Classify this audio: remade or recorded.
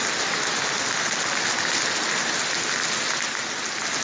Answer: recorded